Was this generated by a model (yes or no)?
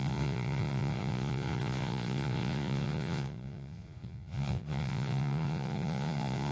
yes